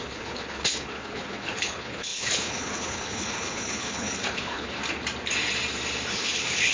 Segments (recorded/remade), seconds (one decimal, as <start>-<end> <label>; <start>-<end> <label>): 0.0-4.8 remade; 4.8-6.1 recorded; 6.1-6.7 remade